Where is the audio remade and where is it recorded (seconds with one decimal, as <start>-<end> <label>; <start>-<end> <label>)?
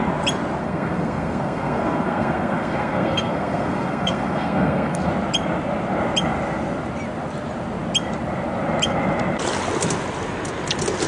0.0-0.6 recorded; 0.6-5.1 remade; 5.1-11.1 recorded